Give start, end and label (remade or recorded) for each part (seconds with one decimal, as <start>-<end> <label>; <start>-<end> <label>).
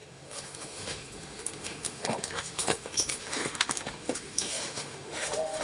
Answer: 0.0-5.6 remade